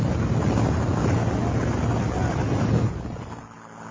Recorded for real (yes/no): yes